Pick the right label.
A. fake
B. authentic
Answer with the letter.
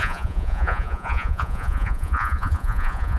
A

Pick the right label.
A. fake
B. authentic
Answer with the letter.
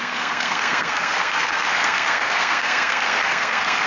A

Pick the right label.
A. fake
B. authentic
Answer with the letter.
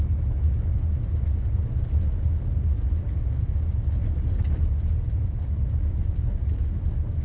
B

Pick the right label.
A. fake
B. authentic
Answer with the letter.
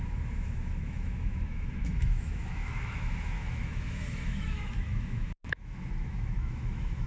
A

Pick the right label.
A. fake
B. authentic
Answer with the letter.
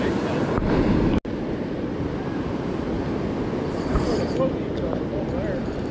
B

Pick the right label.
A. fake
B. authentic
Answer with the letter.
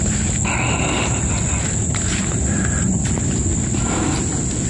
B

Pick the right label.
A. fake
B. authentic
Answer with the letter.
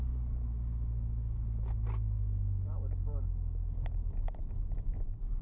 B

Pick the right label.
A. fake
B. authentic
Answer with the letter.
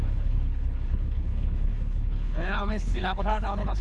A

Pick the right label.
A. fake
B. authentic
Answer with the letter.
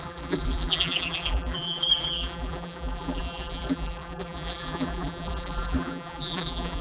A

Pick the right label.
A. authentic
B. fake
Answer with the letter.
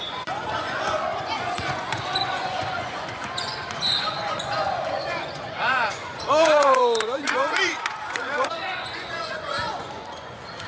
B